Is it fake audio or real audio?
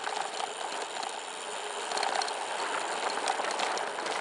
real